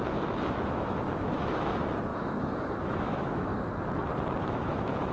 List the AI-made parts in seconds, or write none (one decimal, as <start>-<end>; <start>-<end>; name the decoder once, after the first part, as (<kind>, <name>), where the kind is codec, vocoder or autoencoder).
0.0-3.5 (autoencoder, DAC-VAE); 4.4-5.1